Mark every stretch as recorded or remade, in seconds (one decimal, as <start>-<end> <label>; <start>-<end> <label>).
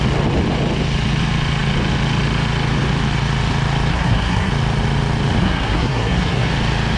0.0-3.9 recorded; 3.9-4.5 remade; 4.5-5.4 recorded; 5.4-6.5 remade; 6.5-7.0 recorded